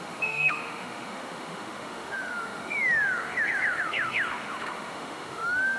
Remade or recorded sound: remade